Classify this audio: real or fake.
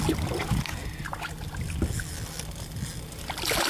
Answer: real